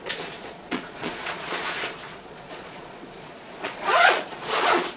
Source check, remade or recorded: remade